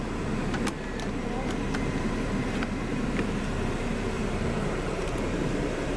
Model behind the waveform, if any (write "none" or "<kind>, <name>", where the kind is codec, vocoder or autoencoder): vocoder, BigVGAN v2